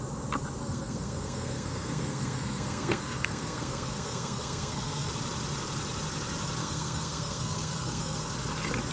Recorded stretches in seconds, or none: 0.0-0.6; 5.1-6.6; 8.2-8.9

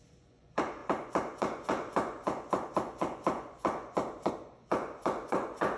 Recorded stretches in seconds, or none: none

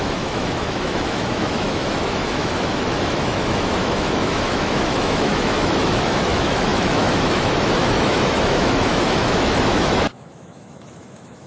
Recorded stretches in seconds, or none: none

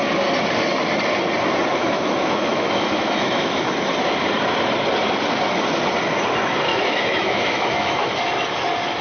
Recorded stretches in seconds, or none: 0.0-1.7; 3.7-6.7; 8.1-9.0